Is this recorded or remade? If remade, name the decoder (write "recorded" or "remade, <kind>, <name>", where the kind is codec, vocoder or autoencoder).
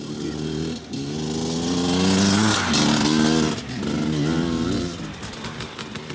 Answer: recorded